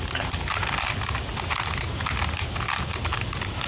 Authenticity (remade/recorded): recorded